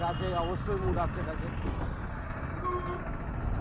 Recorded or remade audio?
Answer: recorded